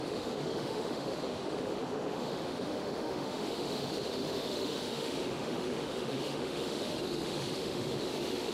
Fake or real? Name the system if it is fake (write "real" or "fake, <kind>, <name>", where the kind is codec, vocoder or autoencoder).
fake, autoencoder, DAC-VAE